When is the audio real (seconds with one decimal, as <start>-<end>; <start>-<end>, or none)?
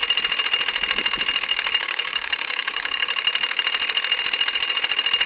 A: 0.0-1.8; 3.1-5.3